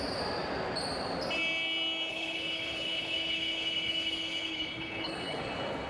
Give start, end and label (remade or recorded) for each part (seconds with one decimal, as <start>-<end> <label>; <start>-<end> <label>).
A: 0.0-2.1 recorded; 2.1-5.4 remade; 5.4-5.9 recorded